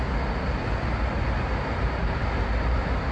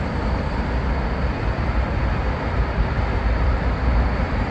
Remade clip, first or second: second